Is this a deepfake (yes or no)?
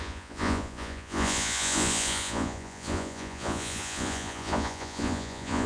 yes